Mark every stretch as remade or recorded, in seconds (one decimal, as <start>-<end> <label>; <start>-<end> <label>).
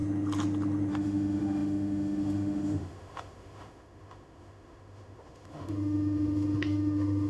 0.0-0.9 recorded; 0.9-7.3 remade